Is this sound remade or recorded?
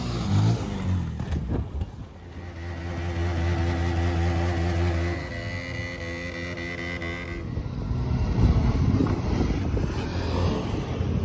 recorded